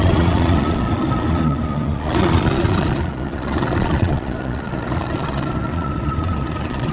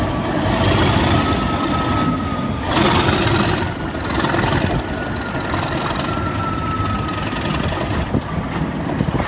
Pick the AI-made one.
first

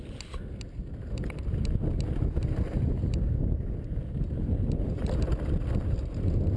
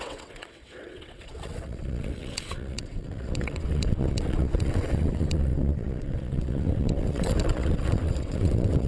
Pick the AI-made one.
second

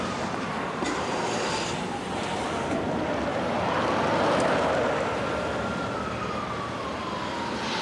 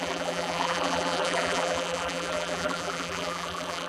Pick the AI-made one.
second